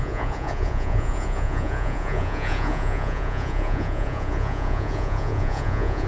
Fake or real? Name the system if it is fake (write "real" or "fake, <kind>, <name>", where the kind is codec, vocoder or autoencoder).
fake, vocoder, Vocos